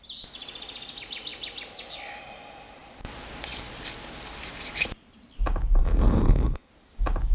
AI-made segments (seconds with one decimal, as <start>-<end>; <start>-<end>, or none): 5.8-6.7